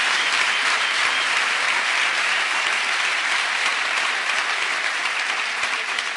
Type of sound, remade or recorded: remade